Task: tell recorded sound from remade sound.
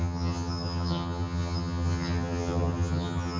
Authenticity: remade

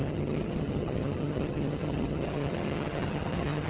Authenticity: remade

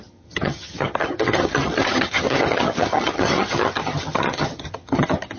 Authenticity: remade